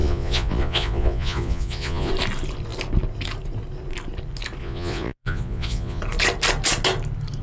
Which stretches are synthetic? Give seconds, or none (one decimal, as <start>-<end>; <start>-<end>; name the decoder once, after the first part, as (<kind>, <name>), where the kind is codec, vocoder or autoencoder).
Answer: 0.0-2.1 (vocoder, Vocos); 4.6-6.0